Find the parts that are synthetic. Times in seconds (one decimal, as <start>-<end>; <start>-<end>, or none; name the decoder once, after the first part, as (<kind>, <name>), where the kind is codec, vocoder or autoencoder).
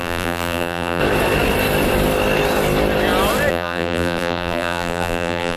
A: 0.0-1.0 (vocoder, BigVGAN v2); 3.5-5.6